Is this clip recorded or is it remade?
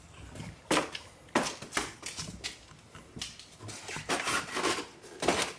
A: recorded